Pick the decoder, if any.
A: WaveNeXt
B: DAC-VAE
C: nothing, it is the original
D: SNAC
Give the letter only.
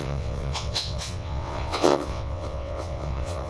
A